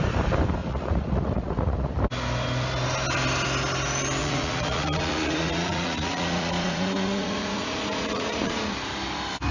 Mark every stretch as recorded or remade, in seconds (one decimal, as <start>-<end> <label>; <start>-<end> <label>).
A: 0.0-0.6 recorded; 0.6-1.9 remade; 1.9-4.2 recorded; 4.2-8.7 remade; 8.7-9.5 recorded